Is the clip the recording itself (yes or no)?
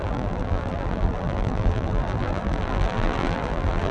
no